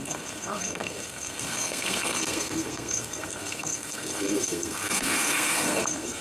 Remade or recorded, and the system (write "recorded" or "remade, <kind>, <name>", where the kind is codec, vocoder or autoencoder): remade, codec, SNAC